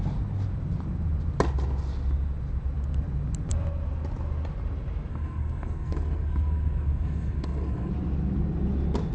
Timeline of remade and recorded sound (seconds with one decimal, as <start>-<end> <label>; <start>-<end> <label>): 0.0-5.1 recorded; 5.1-7.9 remade; 7.9-9.1 recorded